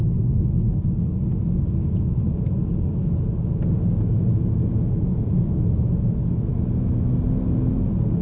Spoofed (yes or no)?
no